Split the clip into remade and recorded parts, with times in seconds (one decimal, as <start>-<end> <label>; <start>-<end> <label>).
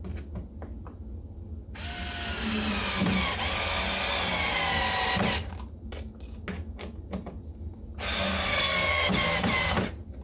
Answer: 0.0-8.5 recorded; 8.5-9.1 remade; 9.1-10.2 recorded